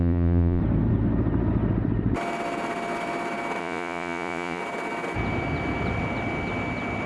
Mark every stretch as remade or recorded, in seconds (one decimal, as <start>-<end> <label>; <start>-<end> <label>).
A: 0.0-0.6 remade; 0.6-3.6 recorded; 3.6-4.6 remade; 4.6-7.1 recorded